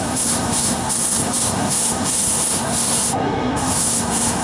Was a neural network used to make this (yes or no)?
yes